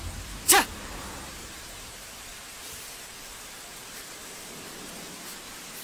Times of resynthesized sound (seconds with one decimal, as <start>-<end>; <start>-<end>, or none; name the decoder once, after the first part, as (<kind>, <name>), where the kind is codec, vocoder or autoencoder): 1.4-4.9 (vocoder, BigVGAN v2)